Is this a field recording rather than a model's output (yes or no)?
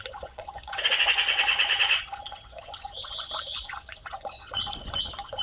no